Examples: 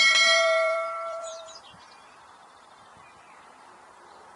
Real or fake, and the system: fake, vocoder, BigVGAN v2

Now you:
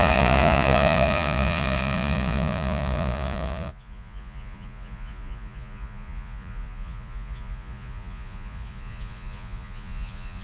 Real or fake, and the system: fake, vocoder, Vocos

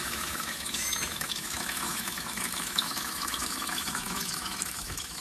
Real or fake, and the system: fake, autoencoder, DAC-VAE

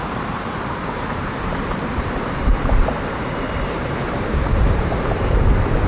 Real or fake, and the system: fake, vocoder, BigVGAN v2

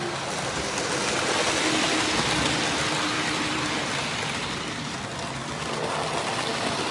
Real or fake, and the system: real